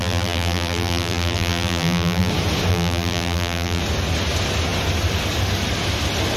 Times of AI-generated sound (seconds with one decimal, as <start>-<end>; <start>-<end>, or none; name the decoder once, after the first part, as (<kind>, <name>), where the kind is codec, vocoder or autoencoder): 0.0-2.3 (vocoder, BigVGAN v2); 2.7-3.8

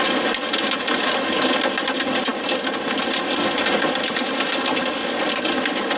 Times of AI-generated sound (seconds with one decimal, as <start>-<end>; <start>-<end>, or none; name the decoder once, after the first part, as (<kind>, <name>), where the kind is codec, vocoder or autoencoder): none

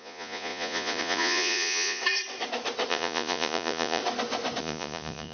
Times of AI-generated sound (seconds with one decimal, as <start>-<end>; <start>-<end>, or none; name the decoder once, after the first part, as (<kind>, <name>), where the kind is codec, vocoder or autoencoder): 0.0-2.0 (vocoder, Vocos); 2.9-4.0; 4.6-5.3